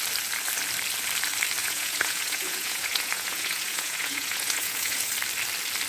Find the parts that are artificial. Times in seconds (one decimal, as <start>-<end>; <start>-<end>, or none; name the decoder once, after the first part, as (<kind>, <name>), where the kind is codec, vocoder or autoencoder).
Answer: 1.6-5.1 (vocoder, Vocos)